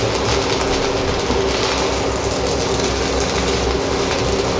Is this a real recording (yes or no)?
yes